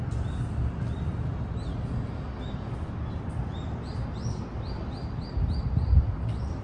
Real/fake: real